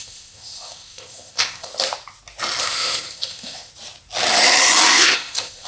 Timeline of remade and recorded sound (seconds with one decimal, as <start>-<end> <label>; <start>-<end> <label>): 0.0-1.7 remade; 1.7-2.6 recorded; 2.6-3.7 remade; 3.7-4.9 recorded; 4.9-5.7 remade